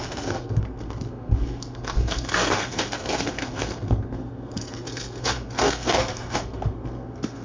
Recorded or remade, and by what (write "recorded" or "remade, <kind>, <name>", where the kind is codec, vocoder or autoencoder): remade, codec, SNAC